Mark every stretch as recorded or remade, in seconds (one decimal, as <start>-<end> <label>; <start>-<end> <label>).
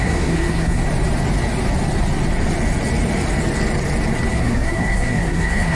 0.0-0.8 remade; 0.8-4.3 recorded; 4.3-5.8 remade